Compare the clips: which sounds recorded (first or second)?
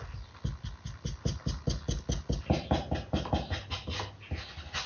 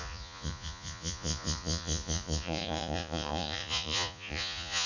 first